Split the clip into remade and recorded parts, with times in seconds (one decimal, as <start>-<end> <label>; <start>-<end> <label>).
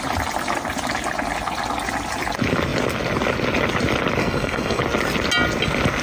0.0-4.2 recorded; 4.2-4.8 remade; 4.8-6.0 recorded